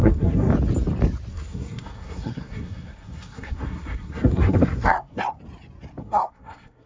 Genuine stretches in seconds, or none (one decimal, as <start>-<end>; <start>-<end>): 0.5-1.3; 5.4-6.0